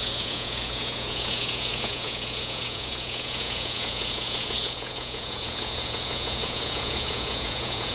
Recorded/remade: remade